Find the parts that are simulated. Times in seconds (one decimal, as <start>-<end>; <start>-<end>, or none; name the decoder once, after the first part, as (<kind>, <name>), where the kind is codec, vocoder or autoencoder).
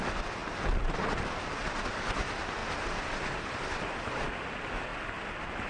0.4-1.2 (vocoder, BigVGAN v2); 2.6-4.2